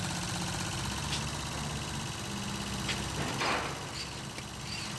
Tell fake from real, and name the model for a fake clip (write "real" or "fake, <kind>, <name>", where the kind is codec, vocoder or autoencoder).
real